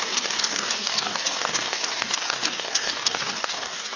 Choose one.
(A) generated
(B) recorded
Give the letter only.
A